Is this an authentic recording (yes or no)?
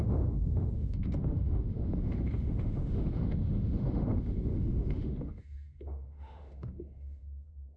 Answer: no